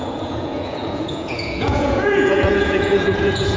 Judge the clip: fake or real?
fake